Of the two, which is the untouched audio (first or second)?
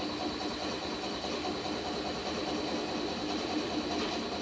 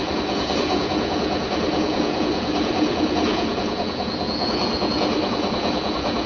first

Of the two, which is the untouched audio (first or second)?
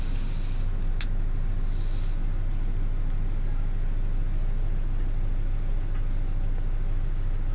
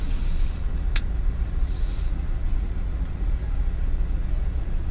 first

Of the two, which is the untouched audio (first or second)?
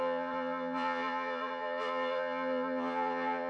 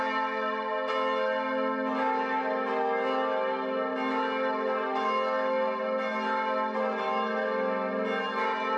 second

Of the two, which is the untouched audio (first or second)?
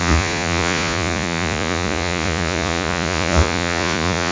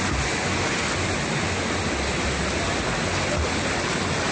second